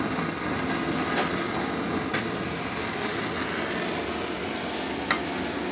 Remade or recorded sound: recorded